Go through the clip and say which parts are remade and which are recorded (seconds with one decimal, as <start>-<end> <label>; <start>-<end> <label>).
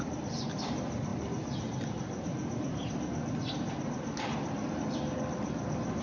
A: 0.0-6.0 recorded